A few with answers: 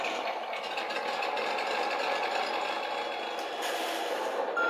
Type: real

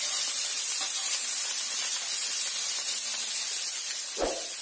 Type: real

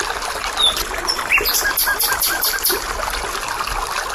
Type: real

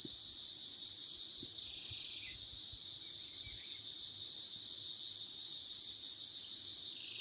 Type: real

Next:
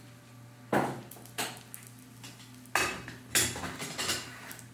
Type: real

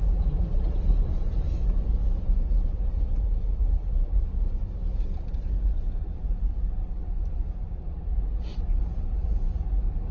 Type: fake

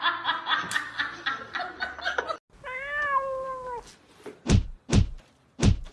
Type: real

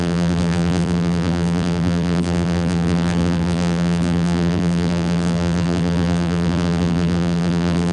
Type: fake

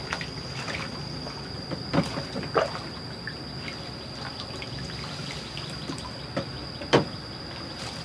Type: fake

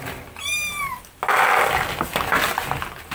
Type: real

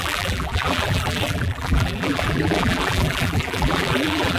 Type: fake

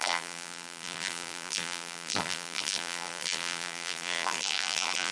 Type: fake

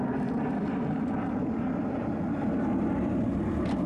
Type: fake